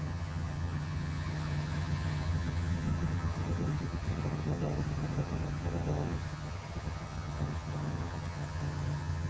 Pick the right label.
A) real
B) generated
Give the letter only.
B